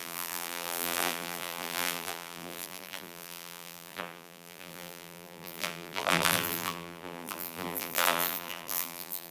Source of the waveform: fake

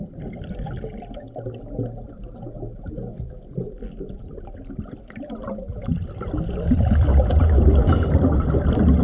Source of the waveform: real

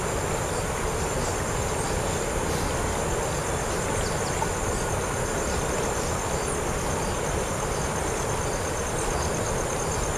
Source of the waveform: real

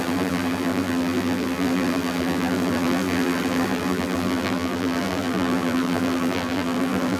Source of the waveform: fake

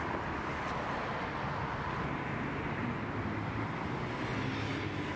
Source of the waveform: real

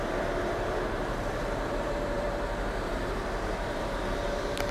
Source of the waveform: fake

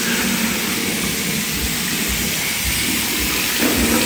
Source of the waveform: real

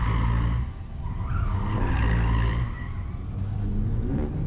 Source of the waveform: real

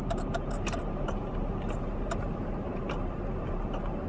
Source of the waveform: fake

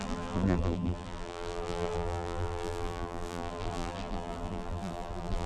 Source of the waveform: fake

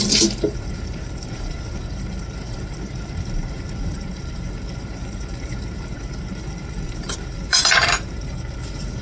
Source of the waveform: fake